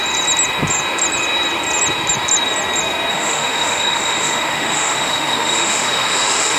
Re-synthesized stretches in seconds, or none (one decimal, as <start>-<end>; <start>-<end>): 3.1-6.6